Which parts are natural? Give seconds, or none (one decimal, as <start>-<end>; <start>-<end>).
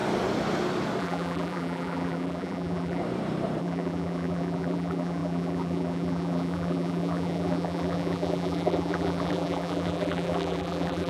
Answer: 0.0-1.0; 3.0-3.6